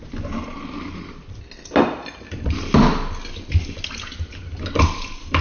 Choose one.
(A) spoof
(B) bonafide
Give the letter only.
B